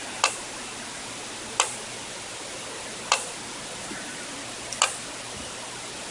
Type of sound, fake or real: real